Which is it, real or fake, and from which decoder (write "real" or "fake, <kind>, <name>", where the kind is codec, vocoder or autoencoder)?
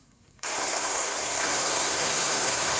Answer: fake, codec, SNAC